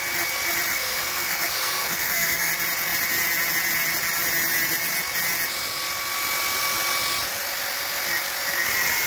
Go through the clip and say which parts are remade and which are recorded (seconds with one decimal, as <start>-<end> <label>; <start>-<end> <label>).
0.0-0.7 recorded; 0.7-2.5 remade; 2.5-9.1 recorded